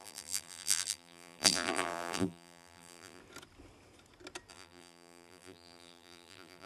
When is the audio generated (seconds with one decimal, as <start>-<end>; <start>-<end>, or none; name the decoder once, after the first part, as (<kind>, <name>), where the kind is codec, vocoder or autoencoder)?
0.0-3.2 (vocoder, BigVGAN v2); 4.5-6.7